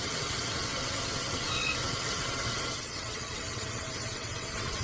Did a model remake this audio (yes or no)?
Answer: yes